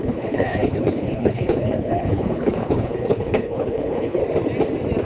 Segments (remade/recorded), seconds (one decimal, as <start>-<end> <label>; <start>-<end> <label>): 0.0-4.2 remade; 4.2-5.0 recorded